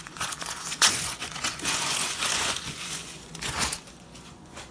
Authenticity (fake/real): fake